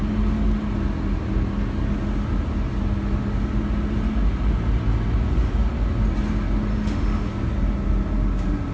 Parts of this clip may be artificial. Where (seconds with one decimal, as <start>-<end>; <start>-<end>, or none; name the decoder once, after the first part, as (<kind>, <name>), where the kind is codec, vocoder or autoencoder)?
6.7-7.3 (autoencoder, DAC-VAE)